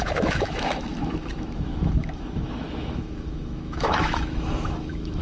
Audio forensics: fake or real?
fake